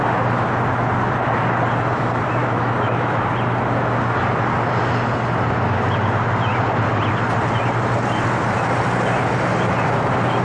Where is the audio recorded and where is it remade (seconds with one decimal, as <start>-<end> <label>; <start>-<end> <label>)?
0.0-2.4 recorded; 2.4-3.2 remade; 3.2-10.4 recorded